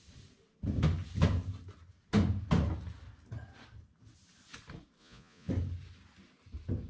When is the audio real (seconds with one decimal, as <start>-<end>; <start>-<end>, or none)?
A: 0.0-5.0; 5.5-6.9